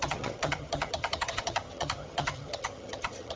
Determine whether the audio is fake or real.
fake